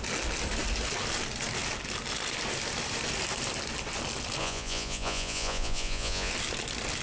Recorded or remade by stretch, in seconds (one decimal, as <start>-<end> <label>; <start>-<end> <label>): 0.0-4.4 recorded; 4.4-6.3 remade; 6.3-7.0 recorded